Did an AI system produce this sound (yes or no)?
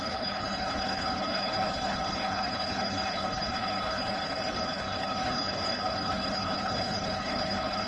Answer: yes